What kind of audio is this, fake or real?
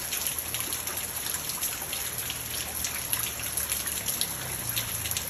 real